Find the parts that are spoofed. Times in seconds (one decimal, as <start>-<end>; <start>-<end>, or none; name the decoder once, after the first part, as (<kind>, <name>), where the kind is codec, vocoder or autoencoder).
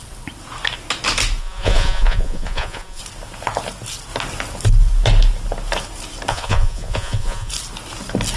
1.4-3.0 (vocoder, Vocos); 6.3-7.5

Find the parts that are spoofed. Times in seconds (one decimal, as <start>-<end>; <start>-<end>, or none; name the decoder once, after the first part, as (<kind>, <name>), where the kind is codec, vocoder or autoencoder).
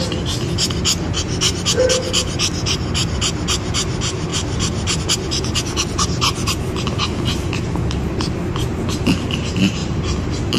none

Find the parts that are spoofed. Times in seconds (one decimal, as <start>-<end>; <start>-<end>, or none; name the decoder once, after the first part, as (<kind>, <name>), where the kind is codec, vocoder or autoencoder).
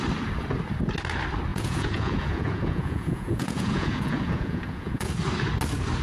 1.5-5.1 (vocoder, Vocos)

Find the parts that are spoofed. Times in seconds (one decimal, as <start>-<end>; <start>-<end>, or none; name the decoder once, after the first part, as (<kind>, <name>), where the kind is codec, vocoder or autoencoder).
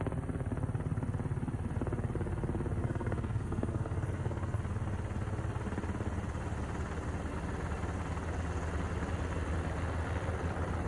2.8-4.6 (codec, SNAC)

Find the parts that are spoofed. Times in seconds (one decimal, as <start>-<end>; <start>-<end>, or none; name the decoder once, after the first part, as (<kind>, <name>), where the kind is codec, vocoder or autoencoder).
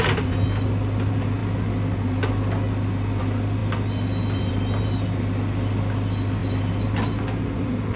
none